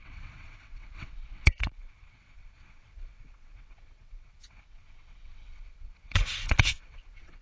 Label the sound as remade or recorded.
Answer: remade